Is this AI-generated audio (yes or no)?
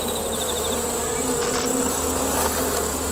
no